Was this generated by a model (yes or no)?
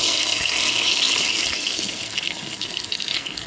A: yes